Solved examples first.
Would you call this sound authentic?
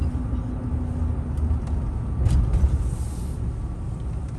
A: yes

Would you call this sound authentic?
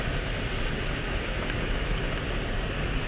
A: yes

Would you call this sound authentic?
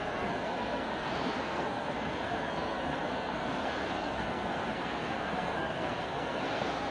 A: no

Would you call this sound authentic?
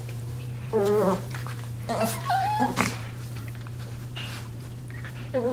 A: no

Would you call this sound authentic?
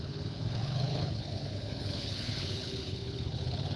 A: no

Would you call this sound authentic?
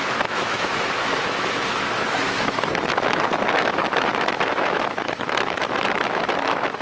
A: no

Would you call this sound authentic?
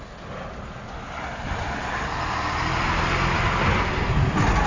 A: yes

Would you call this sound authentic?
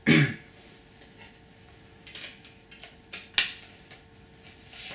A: yes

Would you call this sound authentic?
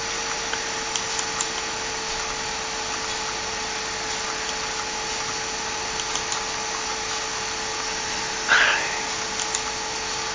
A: yes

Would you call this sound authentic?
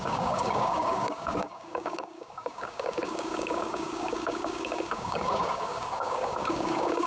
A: no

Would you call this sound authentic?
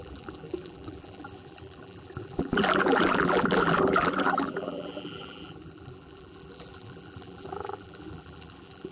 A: no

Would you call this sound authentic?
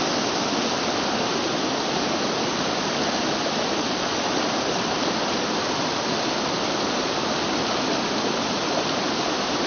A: yes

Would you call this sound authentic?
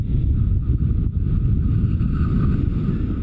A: yes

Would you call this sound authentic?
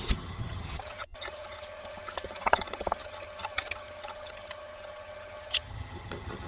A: no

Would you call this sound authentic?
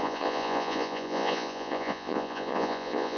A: no